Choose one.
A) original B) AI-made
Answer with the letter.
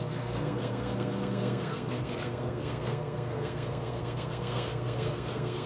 B